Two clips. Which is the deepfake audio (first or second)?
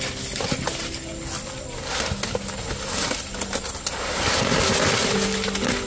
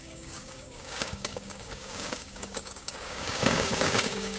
second